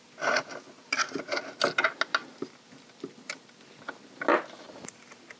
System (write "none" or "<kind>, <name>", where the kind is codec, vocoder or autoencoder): none